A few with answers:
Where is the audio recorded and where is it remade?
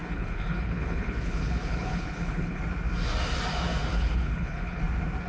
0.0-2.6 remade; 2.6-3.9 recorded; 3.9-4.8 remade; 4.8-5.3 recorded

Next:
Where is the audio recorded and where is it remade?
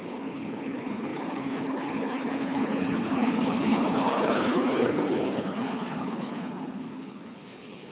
0.0-7.9 remade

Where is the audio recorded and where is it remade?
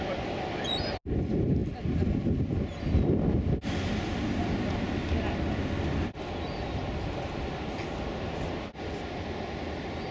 0.0-10.1 recorded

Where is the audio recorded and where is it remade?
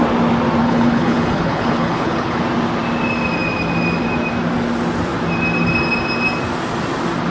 0.0-0.6 recorded; 0.6-2.4 remade; 2.4-7.3 recorded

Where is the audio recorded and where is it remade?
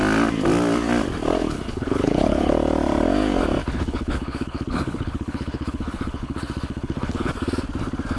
0.0-1.4 recorded; 1.4-2.5 remade; 2.5-3.6 recorded; 3.6-7.3 remade; 7.3-8.2 recorded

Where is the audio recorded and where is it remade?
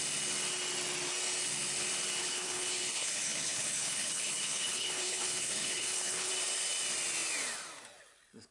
0.0-2.2 recorded; 2.2-6.3 remade; 6.3-8.5 recorded